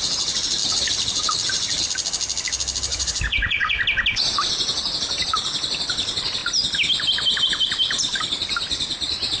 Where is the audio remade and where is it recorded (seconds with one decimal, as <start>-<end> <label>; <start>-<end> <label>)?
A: 0.0-2.9 recorded; 2.9-3.8 remade; 3.8-9.4 recorded